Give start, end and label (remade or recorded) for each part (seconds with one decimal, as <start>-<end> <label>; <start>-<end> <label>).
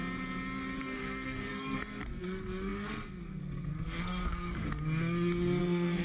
0.0-0.8 recorded; 0.8-4.6 remade; 4.6-5.6 recorded; 5.6-6.0 remade